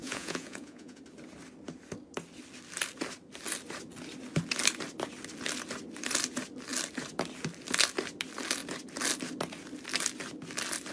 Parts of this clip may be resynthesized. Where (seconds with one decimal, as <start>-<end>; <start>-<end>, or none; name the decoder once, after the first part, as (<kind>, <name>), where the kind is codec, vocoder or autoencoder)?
0.0-1.0 (vocoder, Vocos)